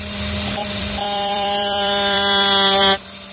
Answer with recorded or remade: remade